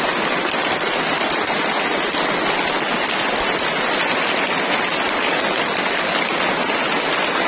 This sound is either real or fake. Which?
real